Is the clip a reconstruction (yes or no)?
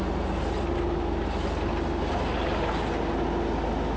no